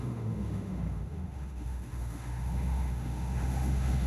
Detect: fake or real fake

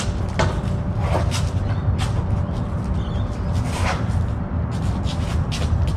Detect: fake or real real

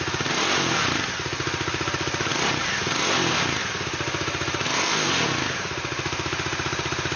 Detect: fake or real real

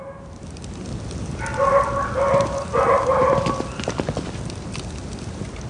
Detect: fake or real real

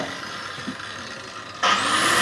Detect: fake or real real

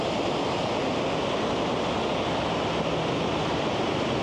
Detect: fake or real real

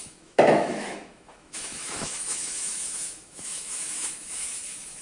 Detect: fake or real fake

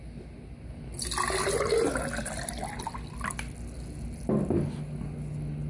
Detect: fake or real real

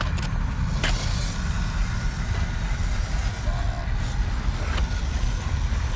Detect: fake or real real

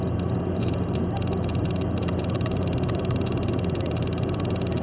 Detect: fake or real fake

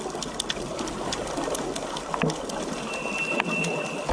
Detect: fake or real real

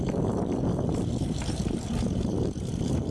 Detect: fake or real fake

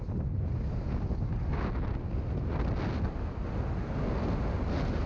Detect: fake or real real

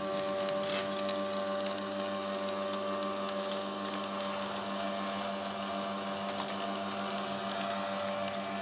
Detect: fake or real real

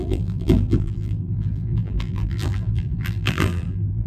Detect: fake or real fake